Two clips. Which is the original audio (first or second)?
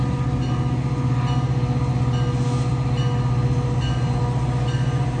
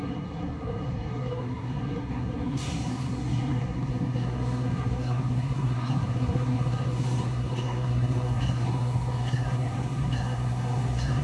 first